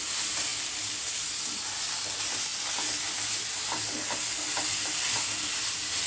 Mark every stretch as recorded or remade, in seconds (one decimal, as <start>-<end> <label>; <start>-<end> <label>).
0.0-6.1 recorded